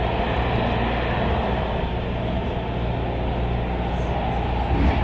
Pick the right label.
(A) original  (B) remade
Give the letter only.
A